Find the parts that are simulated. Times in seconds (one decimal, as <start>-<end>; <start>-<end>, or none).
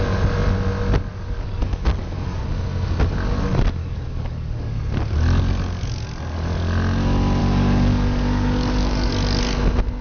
1.1-2.4; 3.8-4.9; 7.4-9.1